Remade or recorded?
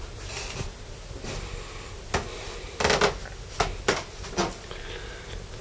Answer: recorded